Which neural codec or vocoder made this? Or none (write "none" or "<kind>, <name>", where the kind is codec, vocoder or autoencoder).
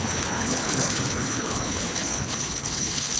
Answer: codec, HILCodec